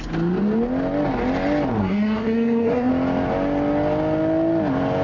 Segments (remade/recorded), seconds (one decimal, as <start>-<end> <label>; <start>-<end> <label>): 0.0-1.8 recorded; 1.8-2.9 remade; 2.9-5.0 recorded